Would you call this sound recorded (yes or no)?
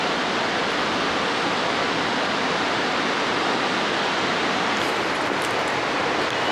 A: yes